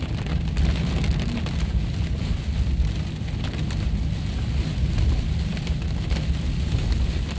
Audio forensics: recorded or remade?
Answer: recorded